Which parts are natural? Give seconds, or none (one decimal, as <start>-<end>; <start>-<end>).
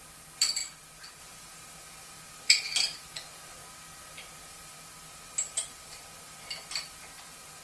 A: 0.6-1.2; 3.6-4.5